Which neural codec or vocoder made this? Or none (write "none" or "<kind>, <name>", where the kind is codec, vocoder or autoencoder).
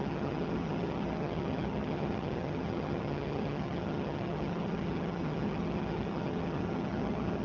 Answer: vocoder, HiFi-GAN